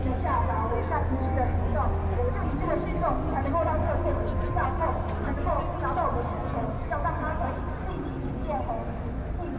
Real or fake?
real